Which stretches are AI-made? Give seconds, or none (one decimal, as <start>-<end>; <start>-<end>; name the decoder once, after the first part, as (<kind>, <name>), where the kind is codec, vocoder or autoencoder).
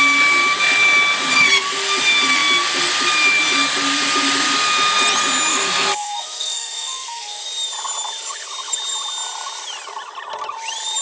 5.5-7.4 (codec, SNAC)